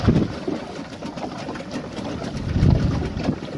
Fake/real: real